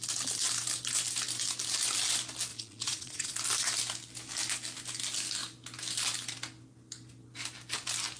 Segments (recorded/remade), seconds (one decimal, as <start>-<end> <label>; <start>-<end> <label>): 0.0-2.5 recorded; 2.5-3.3 remade; 3.3-8.2 recorded